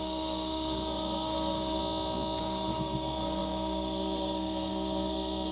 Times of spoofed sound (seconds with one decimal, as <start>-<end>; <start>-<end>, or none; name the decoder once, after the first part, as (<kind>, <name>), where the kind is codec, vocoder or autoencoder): 0.0-1.8 (codec, SNAC); 2.4-5.5